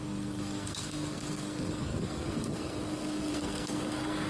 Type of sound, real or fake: fake